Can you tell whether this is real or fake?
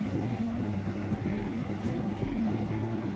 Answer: fake